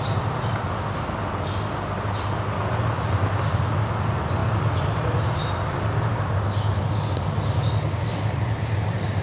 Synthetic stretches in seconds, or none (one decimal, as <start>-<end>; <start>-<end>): none